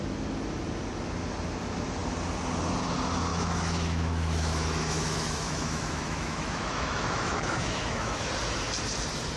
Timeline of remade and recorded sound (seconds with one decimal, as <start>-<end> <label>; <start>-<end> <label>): 0.0-3.3 recorded; 3.3-8.3 remade; 8.3-9.4 recorded